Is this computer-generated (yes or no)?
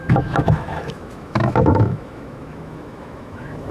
yes